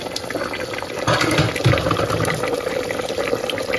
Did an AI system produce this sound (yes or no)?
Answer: no